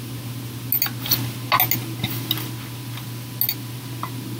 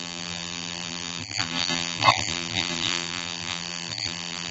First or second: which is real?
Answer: first